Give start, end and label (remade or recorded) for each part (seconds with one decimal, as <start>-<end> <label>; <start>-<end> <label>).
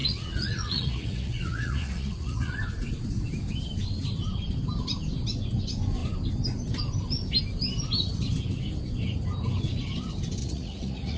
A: 0.0-2.6 remade; 2.6-10.4 recorded; 10.4-11.2 remade